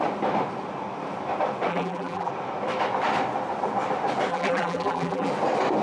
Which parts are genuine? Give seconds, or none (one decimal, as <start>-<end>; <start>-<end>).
0.0-1.7; 2.3-4.3; 5.3-5.8

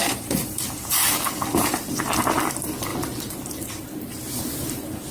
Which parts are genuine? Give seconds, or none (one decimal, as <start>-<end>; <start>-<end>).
none

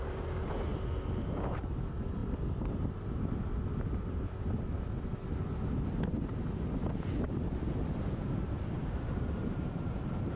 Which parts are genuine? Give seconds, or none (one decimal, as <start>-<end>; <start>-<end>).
0.0-8.8

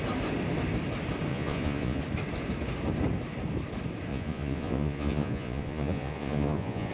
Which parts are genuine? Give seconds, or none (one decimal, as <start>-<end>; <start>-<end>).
0.0-1.3; 2.0-4.1

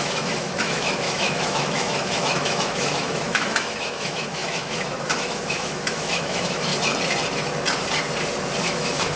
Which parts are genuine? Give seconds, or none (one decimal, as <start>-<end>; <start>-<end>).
6.7-8.6

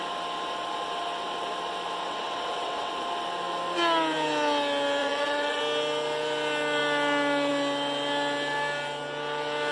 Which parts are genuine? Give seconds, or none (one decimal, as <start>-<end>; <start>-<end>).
0.0-2.0; 2.9-5.0; 5.6-9.7